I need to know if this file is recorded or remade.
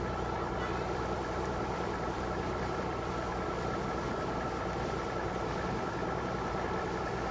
remade